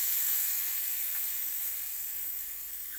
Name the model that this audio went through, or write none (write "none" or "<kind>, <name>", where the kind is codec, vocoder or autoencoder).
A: codec, SNAC